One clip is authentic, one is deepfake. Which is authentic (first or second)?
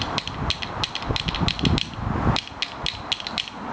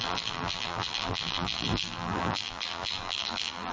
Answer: first